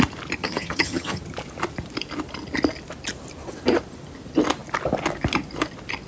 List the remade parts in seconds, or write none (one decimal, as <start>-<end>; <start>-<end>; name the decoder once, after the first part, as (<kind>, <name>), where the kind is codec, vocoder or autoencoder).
0.4-1.2 (vocoder, HiFi-GAN)